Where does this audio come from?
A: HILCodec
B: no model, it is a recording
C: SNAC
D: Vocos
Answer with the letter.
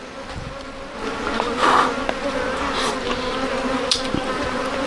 B